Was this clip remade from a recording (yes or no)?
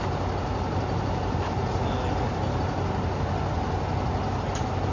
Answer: no